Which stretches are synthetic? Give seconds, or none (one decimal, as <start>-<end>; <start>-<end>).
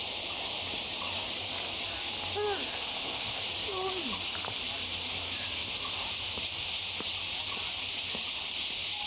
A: 2.7-3.4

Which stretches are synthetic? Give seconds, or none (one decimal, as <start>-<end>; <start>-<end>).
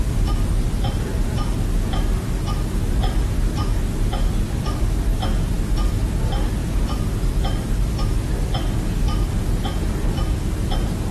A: none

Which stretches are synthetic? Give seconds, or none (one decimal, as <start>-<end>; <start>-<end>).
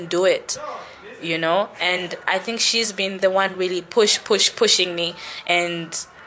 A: 1.7-5.5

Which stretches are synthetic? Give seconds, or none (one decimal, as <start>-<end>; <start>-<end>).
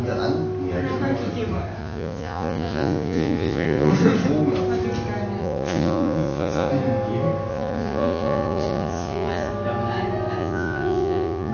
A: 1.8-3.9; 5.4-6.7; 7.5-9.5; 10.4-11.5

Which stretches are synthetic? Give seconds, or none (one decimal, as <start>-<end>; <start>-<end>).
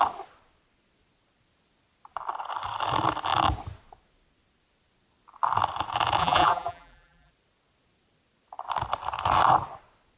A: 6.2-7.3